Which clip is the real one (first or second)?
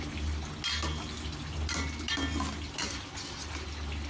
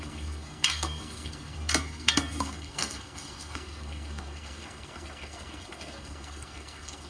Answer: first